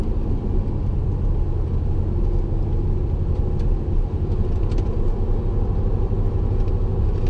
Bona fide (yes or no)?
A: yes